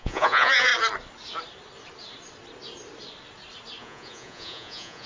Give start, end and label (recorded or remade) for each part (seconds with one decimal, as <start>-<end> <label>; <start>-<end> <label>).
0.0-0.7 remade; 0.7-3.8 recorded; 3.8-5.1 remade